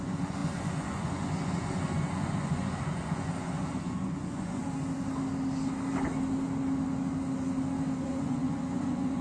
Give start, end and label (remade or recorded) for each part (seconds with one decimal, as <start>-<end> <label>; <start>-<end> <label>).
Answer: 0.0-4.6 remade; 4.6-8.0 recorded; 8.0-9.2 remade